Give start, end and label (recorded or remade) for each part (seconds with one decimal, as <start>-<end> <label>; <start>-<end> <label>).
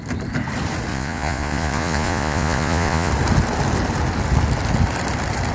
0.0-0.9 recorded; 0.9-3.1 remade; 3.1-5.5 recorded